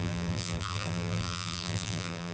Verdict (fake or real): fake